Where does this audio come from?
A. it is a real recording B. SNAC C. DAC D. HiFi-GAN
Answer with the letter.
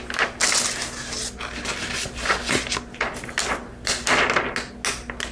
A